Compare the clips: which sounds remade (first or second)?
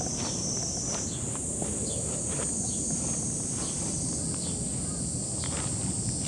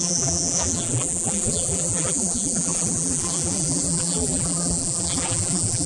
second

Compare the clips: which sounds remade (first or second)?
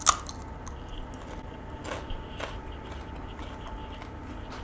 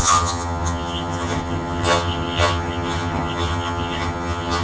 second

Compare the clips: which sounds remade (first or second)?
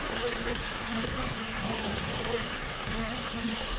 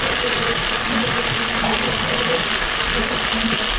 first